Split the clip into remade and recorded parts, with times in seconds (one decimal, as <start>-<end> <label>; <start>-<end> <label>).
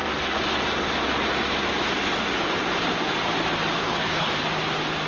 0.0-3.8 recorded; 3.8-4.4 remade; 4.4-5.1 recorded